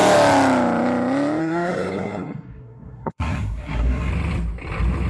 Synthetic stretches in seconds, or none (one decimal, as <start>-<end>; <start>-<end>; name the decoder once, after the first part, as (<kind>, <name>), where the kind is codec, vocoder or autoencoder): 1.4-4.1 (codec, SNAC)